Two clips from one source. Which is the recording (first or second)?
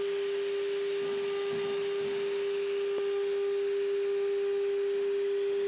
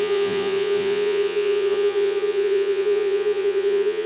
first